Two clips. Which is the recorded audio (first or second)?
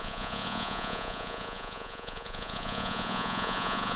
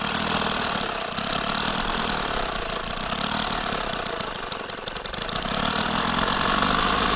second